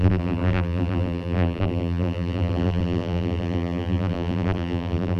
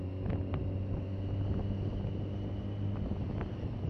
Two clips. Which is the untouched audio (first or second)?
second